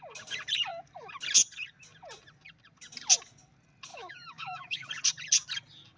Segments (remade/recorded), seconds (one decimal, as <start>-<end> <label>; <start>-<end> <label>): 0.0-3.9 recorded; 3.9-4.9 remade; 4.9-6.0 recorded